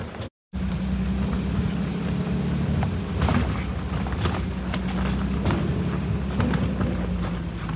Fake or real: real